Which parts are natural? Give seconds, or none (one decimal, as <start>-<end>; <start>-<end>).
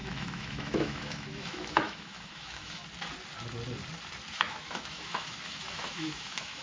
2.8-4.3